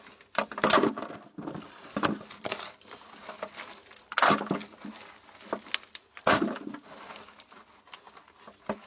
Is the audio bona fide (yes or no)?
yes